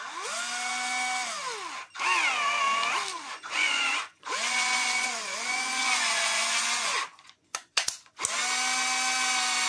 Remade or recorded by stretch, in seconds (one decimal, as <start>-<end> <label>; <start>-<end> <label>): 0.0-3.1 recorded; 3.1-8.2 remade; 8.2-9.7 recorded